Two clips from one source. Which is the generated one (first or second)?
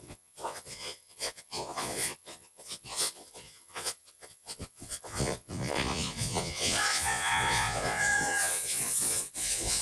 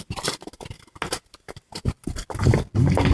first